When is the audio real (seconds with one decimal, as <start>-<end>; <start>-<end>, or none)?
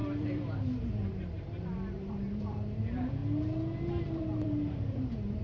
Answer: 3.2-4.0